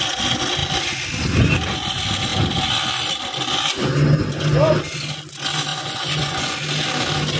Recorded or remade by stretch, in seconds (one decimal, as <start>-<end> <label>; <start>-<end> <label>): 0.0-5.7 recorded; 5.7-6.6 remade; 6.6-7.4 recorded